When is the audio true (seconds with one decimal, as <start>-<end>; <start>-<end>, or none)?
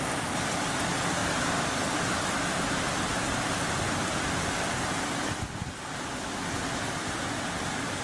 0.0-8.0